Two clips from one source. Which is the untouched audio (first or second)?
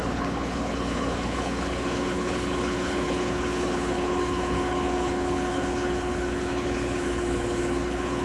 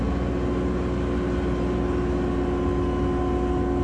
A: second